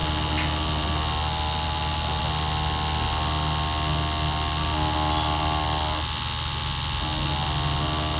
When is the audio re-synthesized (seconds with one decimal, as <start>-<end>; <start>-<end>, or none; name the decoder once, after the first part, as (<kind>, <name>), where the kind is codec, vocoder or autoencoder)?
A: none